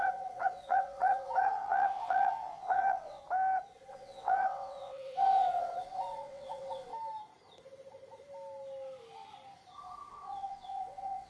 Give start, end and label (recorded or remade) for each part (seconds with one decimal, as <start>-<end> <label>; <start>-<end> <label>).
0.0-3.2 remade; 3.2-3.9 recorded; 3.9-6.9 remade; 6.9-10.1 recorded; 10.1-11.3 remade

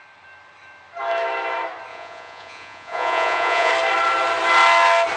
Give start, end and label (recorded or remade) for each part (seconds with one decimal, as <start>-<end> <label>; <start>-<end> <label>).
0.0-1.9 recorded; 1.9-3.7 remade; 3.7-5.2 recorded

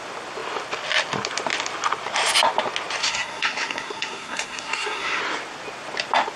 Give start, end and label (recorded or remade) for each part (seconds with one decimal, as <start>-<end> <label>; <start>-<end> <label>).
0.0-3.0 recorded; 3.0-5.2 remade; 5.2-6.4 recorded

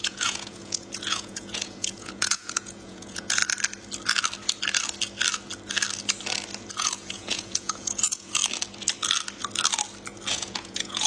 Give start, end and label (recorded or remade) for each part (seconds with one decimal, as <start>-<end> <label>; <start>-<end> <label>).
0.0-3.4 remade; 3.4-6.7 recorded; 6.7-8.4 remade; 8.4-10.3 recorded; 10.3-11.1 remade

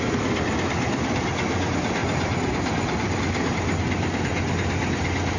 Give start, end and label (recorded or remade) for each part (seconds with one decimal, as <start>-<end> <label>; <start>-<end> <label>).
0.0-5.4 recorded

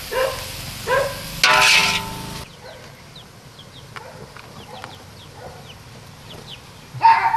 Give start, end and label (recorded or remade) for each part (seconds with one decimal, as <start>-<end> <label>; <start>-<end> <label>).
0.0-7.4 recorded

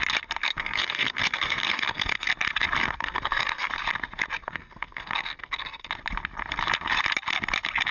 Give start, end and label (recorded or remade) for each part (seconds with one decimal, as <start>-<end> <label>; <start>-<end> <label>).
0.0-0.4 recorded; 0.4-2.3 remade; 2.3-2.8 recorded; 2.8-3.7 remade; 3.7-4.4 recorded; 4.4-5.9 remade; 5.9-7.9 recorded